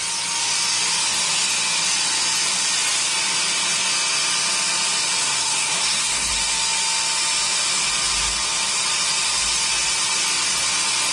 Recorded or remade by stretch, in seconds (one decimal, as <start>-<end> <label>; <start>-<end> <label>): 0.0-5.2 recorded; 5.2-6.3 remade; 6.3-11.1 recorded